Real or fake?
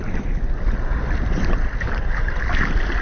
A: real